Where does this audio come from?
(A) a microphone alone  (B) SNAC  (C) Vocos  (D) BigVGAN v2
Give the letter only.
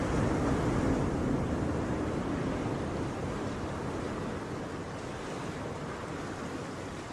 A